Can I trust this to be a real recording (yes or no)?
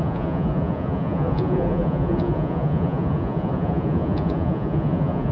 no